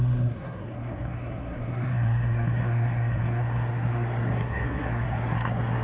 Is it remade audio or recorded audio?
remade